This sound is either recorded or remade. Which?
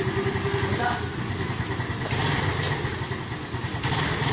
recorded